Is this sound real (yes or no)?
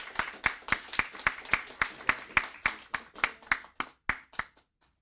yes